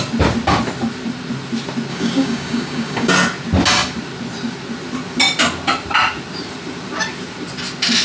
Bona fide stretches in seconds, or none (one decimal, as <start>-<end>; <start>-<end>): 0.0-1.9; 3.1-8.0